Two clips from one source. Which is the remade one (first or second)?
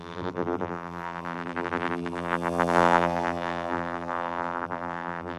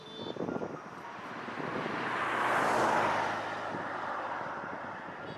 first